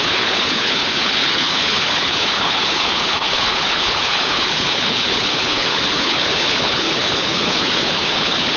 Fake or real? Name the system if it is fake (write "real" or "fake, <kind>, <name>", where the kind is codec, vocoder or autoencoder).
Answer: fake, codec, HILCodec